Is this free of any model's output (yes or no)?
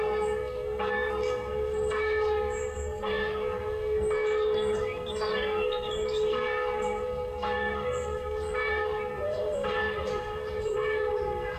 no